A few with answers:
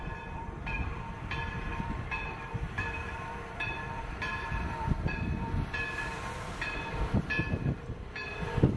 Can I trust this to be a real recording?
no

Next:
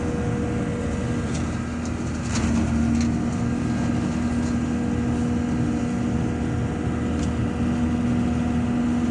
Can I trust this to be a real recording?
yes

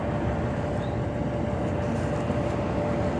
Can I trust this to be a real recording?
yes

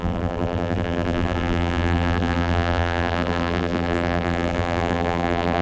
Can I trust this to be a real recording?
no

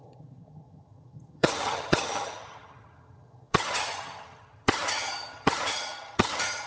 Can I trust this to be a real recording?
no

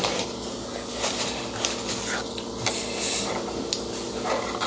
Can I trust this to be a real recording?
yes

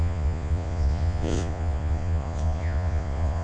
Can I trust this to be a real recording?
no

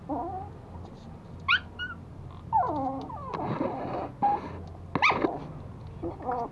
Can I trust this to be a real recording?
yes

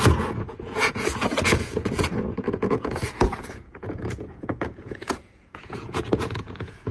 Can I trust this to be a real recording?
no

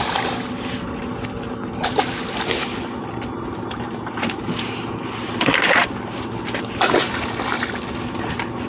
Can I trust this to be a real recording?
yes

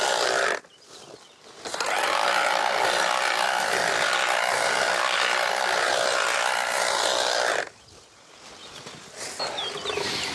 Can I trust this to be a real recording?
yes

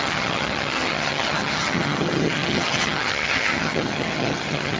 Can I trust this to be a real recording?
no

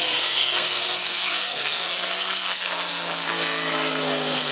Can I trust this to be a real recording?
no